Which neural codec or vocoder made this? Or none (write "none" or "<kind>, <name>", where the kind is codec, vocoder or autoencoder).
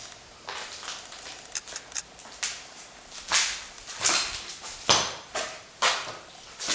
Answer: none